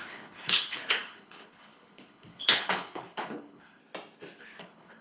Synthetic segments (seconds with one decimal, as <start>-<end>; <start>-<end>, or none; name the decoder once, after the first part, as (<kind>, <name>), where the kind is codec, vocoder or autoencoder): 0.0-3.8 (codec, HILCodec); 4.4-5.0

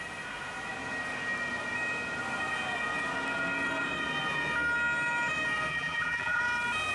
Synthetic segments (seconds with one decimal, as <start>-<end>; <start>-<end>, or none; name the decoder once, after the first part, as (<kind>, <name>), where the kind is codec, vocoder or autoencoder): 5.7-6.4 (vocoder, BigVGAN v2)

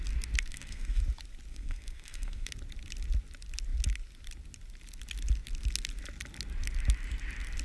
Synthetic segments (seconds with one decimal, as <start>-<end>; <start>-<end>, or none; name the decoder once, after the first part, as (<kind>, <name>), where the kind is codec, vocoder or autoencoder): 0.5-1.0 (codec, SNAC); 1.5-2.5

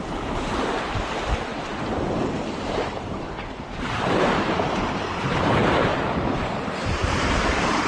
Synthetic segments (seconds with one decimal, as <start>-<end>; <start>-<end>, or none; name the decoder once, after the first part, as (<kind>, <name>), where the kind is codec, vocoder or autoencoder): 0.0-5.9 (vocoder, BigVGAN v2); 6.8-7.9

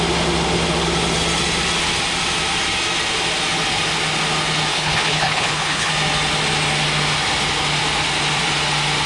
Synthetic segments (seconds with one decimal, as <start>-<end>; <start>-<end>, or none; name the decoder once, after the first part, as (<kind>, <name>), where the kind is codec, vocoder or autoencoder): 4.7-5.9 (codec, HILCodec)